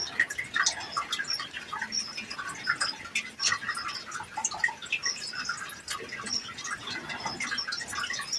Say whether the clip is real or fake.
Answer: real